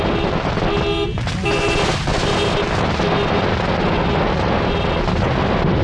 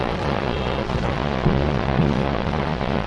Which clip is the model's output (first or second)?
second